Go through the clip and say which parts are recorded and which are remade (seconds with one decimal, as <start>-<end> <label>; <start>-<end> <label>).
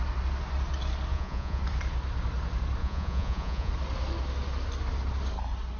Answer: 0.0-1.1 recorded; 1.1-1.6 remade; 1.6-2.8 recorded; 2.8-3.7 remade; 3.7-5.8 recorded